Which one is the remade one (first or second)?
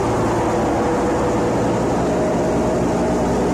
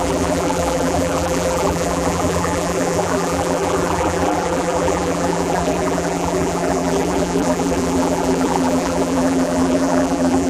second